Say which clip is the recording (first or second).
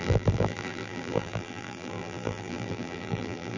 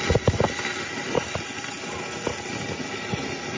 second